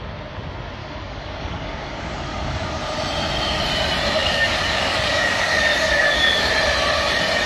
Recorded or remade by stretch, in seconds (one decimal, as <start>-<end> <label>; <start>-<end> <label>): 0.0-0.8 recorded; 0.8-2.8 remade; 2.8-4.2 recorded; 4.2-6.5 remade; 6.5-7.5 recorded